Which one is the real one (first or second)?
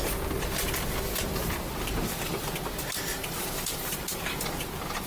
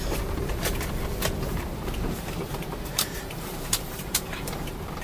first